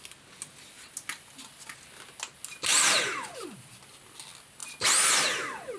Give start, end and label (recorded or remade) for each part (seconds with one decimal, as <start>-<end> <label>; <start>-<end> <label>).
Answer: 0.0-2.7 recorded; 2.7-3.7 remade; 3.7-5.8 recorded